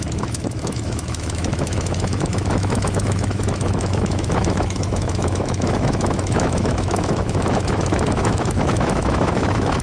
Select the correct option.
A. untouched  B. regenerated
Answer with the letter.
B